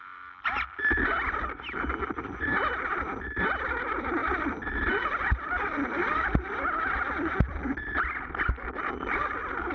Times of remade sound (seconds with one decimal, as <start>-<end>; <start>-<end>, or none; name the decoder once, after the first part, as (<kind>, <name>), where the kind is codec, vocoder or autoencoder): 4.2-7.3 (vocoder, BigVGAN v2)